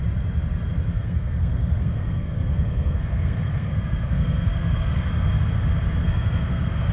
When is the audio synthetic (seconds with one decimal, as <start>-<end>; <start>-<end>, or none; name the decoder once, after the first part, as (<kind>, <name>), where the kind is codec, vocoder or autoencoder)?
0.9-5.0 (codec, SNAC); 6.0-6.9